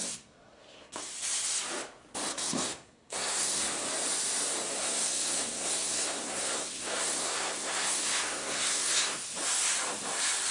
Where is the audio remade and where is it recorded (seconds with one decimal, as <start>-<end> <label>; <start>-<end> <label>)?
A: 0.0-1.1 remade; 1.1-2.3 recorded; 2.3-3.6 remade; 3.6-4.8 recorded; 4.8-9.3 remade; 9.3-10.5 recorded